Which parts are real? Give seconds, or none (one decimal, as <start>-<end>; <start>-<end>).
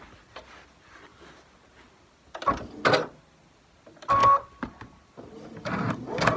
0.0-6.4